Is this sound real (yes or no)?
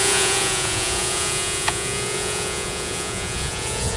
no